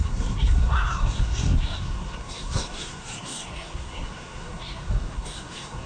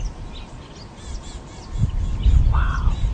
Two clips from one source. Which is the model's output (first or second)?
first